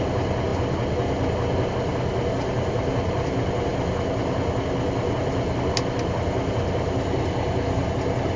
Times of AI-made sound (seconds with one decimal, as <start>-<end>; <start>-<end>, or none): none